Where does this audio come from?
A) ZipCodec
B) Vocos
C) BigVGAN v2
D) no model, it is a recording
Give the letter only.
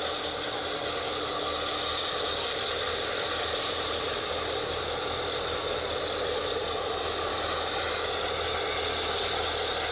D